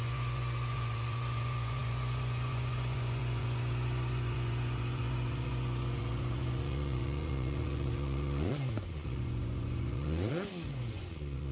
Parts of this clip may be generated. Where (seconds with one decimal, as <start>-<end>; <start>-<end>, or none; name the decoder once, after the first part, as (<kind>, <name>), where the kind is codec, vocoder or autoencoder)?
0.0-11.5 (vocoder, Vocos)